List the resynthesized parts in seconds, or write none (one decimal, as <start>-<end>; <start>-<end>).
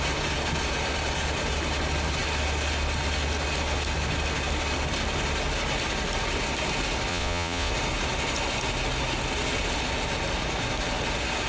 7.1-7.7